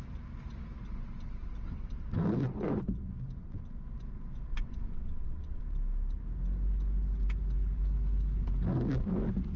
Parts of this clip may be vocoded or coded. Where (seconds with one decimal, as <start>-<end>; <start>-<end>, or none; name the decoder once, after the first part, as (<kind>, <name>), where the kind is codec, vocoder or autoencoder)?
4.5-5.6 (vocoder, WaveNeXt)